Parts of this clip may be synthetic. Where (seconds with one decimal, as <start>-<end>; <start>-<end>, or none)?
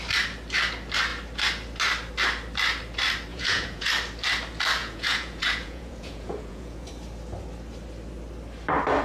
3.3-3.9; 4.8-6.9